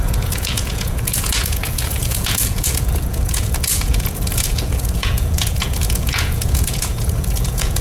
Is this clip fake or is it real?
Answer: fake